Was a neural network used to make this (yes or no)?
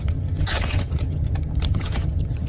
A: yes